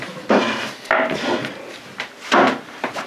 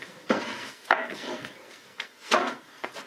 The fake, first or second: second